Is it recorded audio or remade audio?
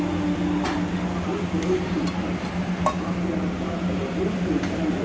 recorded